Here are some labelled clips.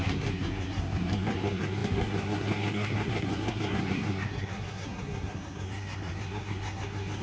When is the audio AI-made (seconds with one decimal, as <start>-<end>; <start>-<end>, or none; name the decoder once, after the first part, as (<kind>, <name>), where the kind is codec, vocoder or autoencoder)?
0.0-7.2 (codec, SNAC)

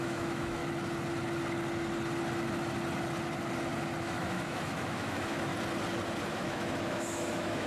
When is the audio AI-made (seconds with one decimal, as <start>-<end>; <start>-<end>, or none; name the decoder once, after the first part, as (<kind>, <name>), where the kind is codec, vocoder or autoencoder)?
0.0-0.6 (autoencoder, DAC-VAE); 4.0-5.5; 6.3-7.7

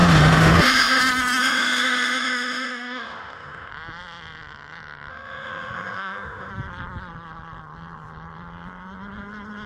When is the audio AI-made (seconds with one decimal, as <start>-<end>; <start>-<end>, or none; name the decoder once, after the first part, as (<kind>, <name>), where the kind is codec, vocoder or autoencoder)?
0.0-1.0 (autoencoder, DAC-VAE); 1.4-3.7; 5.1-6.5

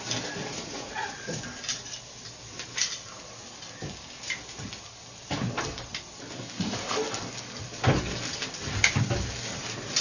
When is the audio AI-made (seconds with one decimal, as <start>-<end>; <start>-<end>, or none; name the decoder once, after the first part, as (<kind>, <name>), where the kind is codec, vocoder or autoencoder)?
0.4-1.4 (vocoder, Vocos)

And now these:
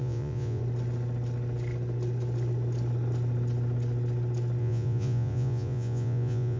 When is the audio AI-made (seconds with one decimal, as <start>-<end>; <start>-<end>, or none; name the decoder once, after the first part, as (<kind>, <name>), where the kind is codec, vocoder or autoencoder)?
0.0-0.6 (vocoder, Vocos); 4.6-6.6

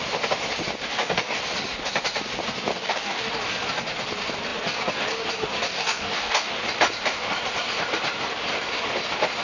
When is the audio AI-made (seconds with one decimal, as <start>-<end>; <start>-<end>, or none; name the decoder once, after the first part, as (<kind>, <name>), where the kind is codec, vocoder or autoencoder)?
0.9-1.4 (codec, DAC); 2.7-3.2; 5.7-6.5

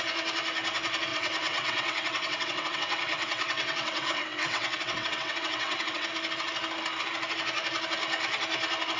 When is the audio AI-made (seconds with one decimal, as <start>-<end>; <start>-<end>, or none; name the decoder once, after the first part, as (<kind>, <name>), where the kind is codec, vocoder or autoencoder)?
1.1-6.1 (vocoder, WaveNeXt)

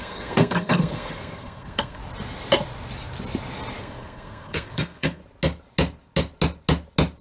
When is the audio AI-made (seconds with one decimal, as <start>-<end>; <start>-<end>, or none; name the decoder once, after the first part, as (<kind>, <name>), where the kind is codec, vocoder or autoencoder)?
0.0-2.0 (codec, SNAC); 3.8-5.2